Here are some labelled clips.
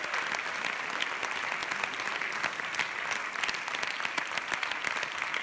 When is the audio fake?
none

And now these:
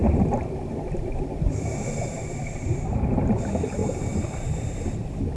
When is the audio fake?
0.0-5.4

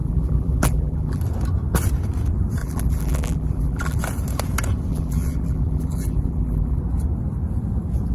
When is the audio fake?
0.0-1.2; 2.6-4.0; 4.9-6.8

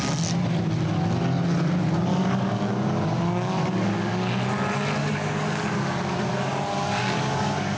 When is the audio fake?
2.1-4.3; 5.0-7.8

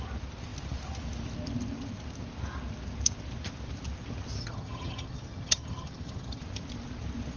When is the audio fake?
4.4-6.4

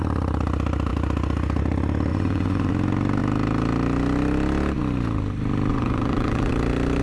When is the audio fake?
2.1-2.7; 5.7-6.5